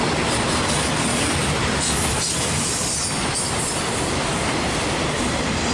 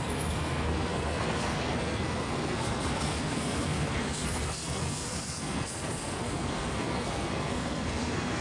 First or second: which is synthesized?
second